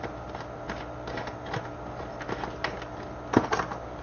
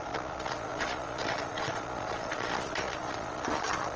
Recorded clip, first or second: first